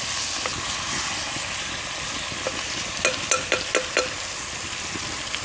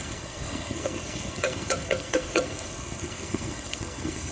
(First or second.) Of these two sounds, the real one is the first